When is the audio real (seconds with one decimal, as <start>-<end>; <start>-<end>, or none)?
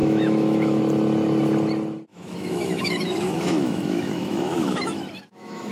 0.8-2.1